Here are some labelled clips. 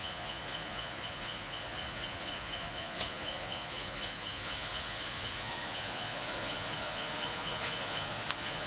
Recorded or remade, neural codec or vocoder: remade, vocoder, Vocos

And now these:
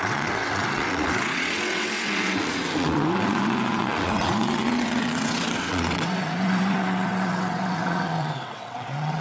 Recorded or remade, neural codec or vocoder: remade, vocoder, WaveNeXt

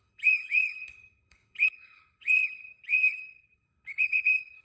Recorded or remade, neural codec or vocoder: remade, codec, HILCodec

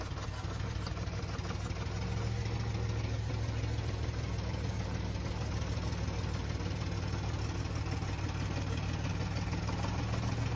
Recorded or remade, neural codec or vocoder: recorded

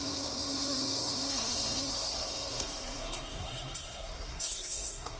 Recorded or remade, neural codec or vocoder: remade, codec, SNAC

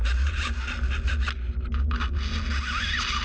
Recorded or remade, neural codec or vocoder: recorded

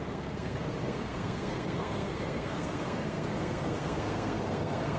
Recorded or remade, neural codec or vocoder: remade, codec, SNAC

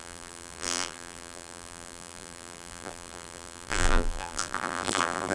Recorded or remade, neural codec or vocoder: remade, vocoder, BigVGAN v2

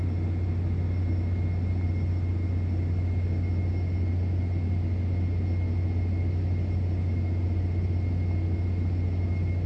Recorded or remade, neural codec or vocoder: recorded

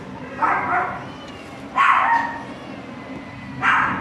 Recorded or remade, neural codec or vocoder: recorded